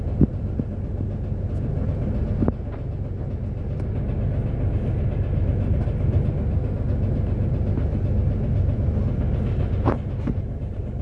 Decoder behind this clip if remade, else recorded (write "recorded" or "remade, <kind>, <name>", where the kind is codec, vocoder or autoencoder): recorded